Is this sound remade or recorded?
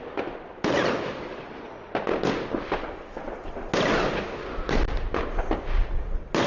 recorded